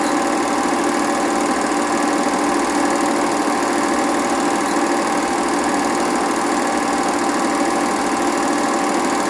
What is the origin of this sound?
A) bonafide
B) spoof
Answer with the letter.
A